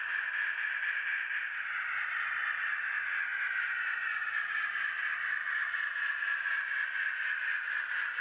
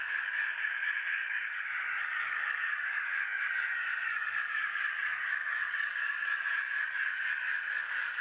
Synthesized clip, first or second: second